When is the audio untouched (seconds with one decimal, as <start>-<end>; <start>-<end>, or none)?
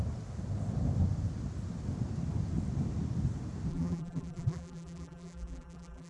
0.0-3.7